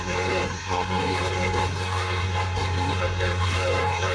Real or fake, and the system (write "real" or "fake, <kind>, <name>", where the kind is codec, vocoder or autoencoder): fake, codec, SNAC